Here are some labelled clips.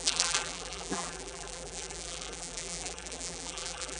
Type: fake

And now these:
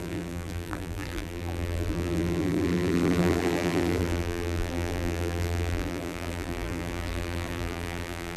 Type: fake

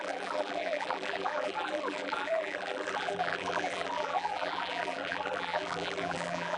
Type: fake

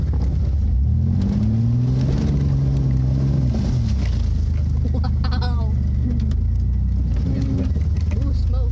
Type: real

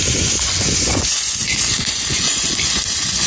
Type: fake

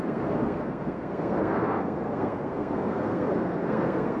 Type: fake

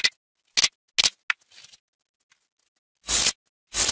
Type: real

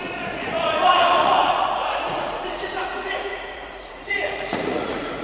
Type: fake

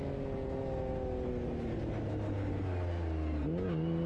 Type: real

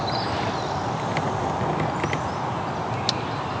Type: real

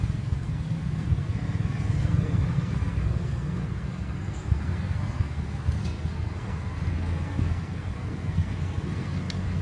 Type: fake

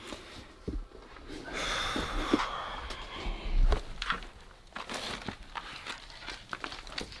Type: real